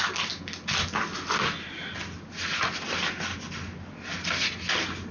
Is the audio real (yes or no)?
yes